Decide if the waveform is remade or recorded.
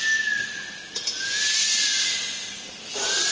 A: recorded